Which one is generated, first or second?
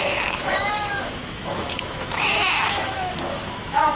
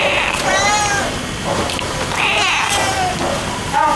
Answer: first